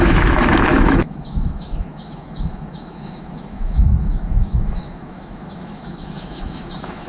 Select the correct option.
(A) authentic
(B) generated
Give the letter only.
B